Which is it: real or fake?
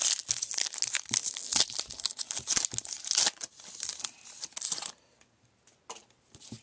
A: real